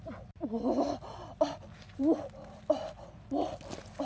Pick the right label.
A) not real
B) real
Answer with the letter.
B